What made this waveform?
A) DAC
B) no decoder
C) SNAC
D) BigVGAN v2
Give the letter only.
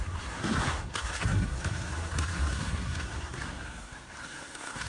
C